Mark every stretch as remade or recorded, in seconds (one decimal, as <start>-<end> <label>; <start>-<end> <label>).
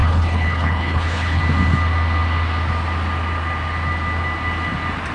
0.0-1.4 remade; 1.4-5.1 recorded